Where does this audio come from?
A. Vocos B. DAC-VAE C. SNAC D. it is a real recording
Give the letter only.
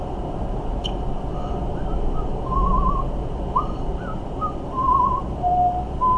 D